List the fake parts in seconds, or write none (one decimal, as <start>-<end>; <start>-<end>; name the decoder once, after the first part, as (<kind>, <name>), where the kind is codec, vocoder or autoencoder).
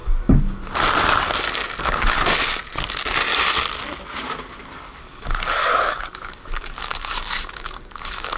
1.8-2.6 (codec, DAC); 4.6-8.4